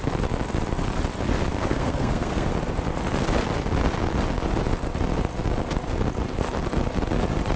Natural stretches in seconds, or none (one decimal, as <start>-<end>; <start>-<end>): 0.0-1.5; 2.5-7.6

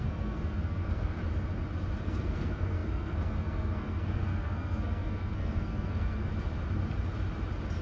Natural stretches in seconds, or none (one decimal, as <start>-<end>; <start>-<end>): 1.2-2.0; 6.3-7.8

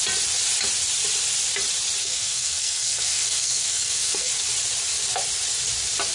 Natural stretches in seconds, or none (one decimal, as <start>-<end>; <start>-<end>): 0.0-2.0; 4.3-6.1

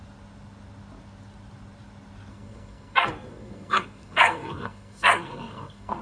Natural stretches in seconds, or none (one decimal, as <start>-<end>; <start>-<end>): 0.0-2.3

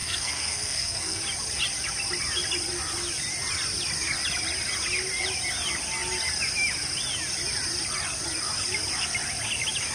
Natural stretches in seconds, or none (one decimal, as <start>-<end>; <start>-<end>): 1.2-9.9

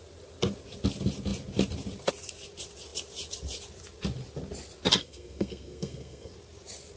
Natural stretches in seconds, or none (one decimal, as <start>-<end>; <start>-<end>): 0.0-5.0; 6.3-7.0